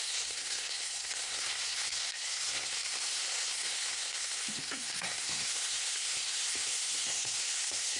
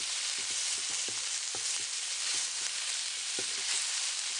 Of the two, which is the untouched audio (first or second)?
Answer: second